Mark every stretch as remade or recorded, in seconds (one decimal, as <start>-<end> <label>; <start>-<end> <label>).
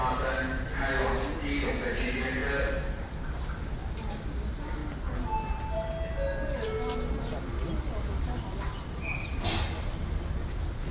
0.0-10.9 recorded